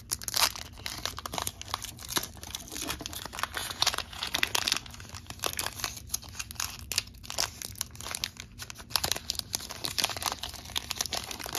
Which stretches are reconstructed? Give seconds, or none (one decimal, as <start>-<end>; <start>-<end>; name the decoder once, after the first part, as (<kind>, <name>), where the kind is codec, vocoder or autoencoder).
3.6-4.3 (vocoder, Vocos)